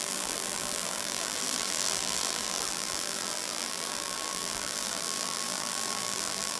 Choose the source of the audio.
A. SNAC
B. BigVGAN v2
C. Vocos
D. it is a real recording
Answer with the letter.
B